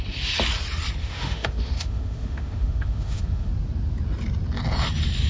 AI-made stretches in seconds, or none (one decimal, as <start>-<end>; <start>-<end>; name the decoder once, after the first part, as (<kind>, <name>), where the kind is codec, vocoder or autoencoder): 1.0-3.5 (autoencoder, DAC-VAE)